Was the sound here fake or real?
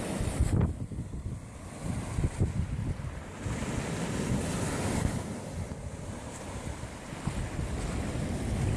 real